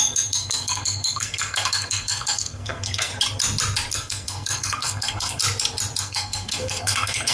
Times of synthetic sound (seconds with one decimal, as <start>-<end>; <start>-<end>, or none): 0.0-3.1; 3.9-5.4; 6.0-7.3